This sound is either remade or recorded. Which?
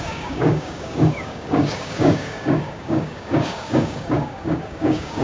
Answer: remade